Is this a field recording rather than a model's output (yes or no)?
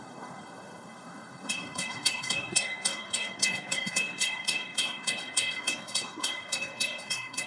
no